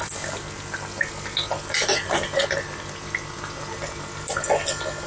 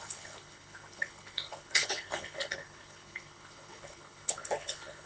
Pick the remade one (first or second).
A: second